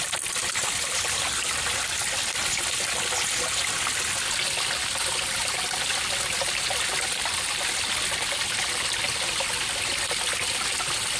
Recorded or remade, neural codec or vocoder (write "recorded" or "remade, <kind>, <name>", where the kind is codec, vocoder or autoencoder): recorded